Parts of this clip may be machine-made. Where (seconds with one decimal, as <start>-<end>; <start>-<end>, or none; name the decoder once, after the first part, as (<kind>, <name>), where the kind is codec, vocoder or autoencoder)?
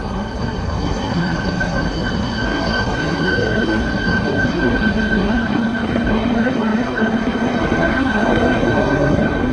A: 0.0-9.5 (codec, SNAC)